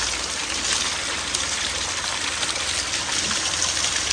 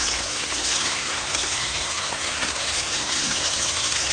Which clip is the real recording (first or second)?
first